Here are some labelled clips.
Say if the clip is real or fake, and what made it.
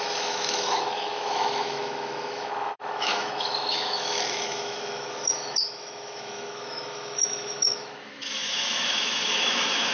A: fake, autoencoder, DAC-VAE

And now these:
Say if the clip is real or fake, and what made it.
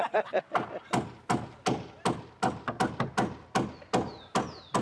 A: real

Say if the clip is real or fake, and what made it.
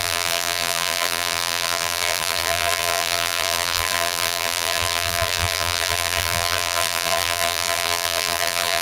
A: fake, vocoder, BigVGAN v2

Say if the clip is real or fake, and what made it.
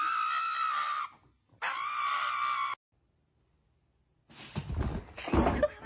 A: real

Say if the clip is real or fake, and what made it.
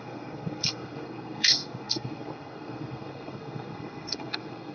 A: fake, codec, SNAC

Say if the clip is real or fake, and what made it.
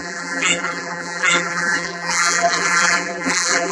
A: fake, vocoder, BigVGAN v2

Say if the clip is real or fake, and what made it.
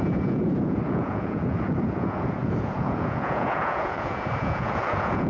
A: fake, vocoder, Vocos